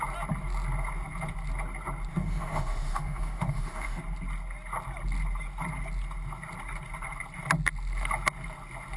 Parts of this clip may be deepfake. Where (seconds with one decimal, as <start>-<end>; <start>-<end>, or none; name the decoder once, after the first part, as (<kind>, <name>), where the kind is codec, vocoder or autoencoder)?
2.1-4.0 (autoencoder, DAC-VAE)